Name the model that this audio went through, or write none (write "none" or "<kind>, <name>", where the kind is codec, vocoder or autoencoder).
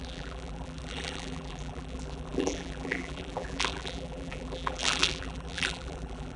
vocoder, BigVGAN v2